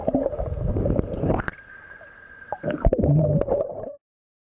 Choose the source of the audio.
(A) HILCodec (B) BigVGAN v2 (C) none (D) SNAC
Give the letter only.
B